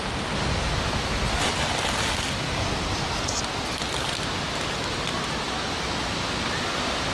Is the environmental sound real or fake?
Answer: real